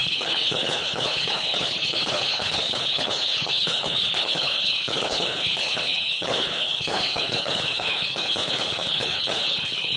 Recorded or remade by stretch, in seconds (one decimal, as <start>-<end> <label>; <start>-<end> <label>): 0.0-10.0 remade